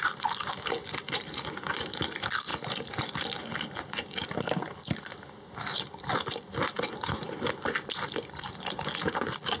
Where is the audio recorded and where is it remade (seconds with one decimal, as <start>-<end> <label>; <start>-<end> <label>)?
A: 0.0-9.6 recorded

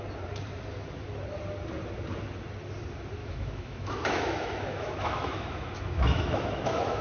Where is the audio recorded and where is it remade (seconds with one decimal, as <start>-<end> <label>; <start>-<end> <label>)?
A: 0.0-3.2 recorded; 3.2-7.0 remade

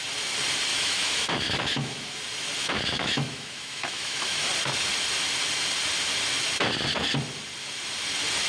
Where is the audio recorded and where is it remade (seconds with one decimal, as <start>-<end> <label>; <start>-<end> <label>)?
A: 0.0-0.7 recorded; 0.7-2.1 remade; 2.1-2.6 recorded; 2.6-4.5 remade; 4.5-8.5 recorded

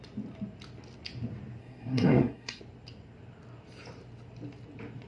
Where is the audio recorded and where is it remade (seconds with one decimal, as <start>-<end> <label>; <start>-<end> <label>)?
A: 0.0-1.6 recorded; 1.6-2.6 remade; 2.6-5.1 recorded

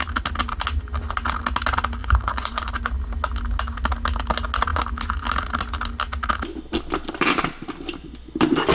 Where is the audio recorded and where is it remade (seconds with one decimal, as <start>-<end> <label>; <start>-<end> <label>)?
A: 0.0-2.0 recorded; 2.0-2.7 remade; 2.7-8.7 recorded

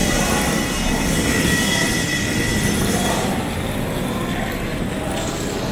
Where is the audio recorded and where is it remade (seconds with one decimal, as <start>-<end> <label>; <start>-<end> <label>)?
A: 0.0-2.5 recorded; 2.5-3.3 remade; 3.3-5.7 recorded

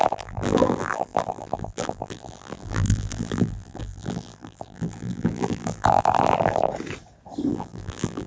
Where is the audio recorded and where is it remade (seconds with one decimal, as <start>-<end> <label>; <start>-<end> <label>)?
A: 0.0-6.7 remade; 6.7-7.5 recorded; 7.5-8.3 remade

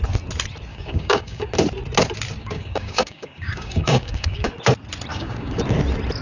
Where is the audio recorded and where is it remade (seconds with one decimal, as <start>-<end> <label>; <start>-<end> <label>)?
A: 0.0-0.7 recorded; 0.7-1.5 remade; 1.5-2.4 recorded; 2.4-4.5 remade; 4.5-5.1 recorded; 5.1-5.6 remade; 5.6-6.2 recorded